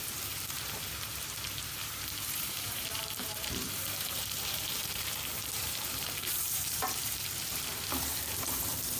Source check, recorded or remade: remade